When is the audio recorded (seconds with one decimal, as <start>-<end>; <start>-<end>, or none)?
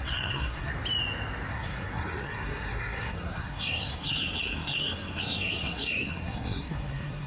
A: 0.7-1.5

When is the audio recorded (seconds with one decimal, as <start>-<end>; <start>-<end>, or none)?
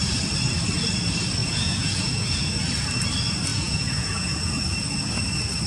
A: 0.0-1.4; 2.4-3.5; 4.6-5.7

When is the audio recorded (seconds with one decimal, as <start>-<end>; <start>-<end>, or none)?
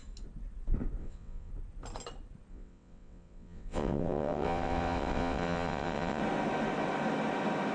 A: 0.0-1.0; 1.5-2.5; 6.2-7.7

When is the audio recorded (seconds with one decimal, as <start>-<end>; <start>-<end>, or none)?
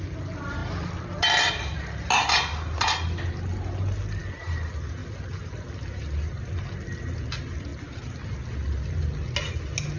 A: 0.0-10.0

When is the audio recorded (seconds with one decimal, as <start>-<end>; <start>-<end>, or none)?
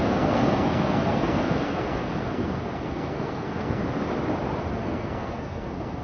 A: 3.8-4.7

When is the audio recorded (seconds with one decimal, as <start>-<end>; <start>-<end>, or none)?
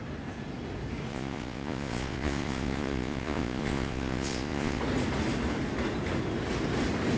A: 0.0-1.1; 4.8-7.2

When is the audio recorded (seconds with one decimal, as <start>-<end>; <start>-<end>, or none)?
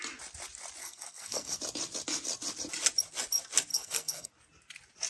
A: 0.0-0.8; 1.6-3.7; 4.3-5.1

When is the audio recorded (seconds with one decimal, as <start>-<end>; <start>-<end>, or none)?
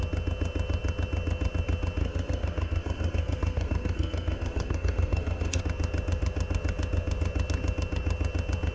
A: 0.0-2.0; 5.6-8.7